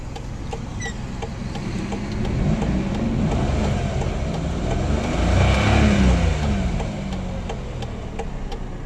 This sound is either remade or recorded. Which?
recorded